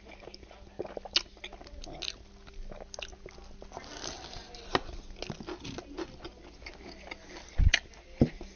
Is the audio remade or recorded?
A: recorded